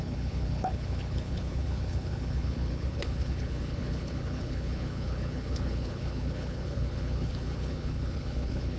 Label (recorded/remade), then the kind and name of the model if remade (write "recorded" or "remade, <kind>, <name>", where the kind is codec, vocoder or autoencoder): remade, codec, HILCodec